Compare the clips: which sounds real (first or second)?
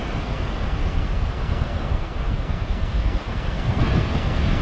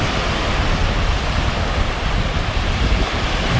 second